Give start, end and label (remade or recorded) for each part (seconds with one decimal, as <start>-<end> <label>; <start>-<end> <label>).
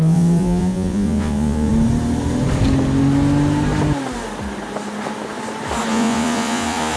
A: 0.0-1.7 remade; 1.7-5.9 recorded; 5.9-7.0 remade